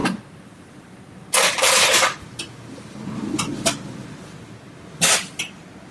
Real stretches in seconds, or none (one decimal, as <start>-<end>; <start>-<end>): 1.1-5.9